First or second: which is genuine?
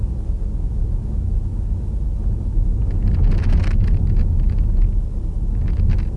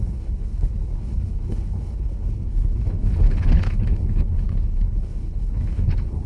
first